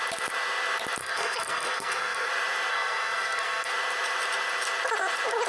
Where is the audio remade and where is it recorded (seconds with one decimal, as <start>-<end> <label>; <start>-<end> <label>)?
0.0-1.0 recorded; 1.0-2.3 remade; 2.3-2.7 recorded; 2.7-3.7 remade; 3.7-5.5 recorded